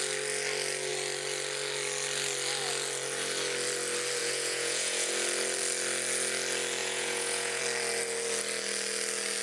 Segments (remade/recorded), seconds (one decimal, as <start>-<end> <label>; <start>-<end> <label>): 0.0-4.2 recorded; 4.2-5.1 remade; 5.1-6.8 recorded; 6.8-7.6 remade; 7.6-9.4 recorded